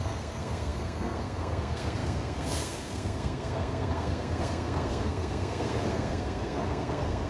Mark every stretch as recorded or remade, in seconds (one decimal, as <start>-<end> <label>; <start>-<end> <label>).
0.0-7.3 remade